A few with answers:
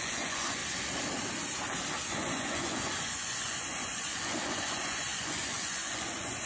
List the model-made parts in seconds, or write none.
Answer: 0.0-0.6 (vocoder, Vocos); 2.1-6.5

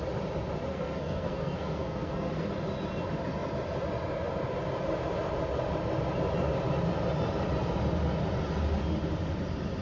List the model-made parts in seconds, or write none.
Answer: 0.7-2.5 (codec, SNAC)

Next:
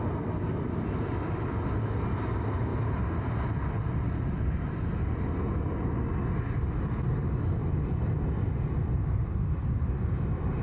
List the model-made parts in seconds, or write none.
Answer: none

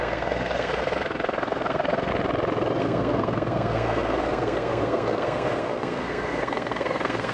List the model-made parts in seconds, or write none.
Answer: 0.0-2.1 (codec, SNAC); 2.8-7.3